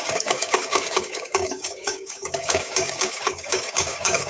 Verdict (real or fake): fake